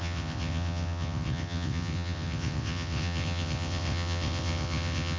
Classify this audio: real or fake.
fake